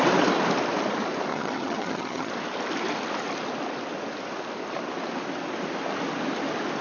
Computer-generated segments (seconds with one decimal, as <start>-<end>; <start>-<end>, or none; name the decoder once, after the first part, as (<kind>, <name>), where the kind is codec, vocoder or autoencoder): 1.3-2.3 (vocoder, HiFi-GAN)